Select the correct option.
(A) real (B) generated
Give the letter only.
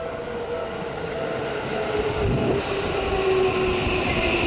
A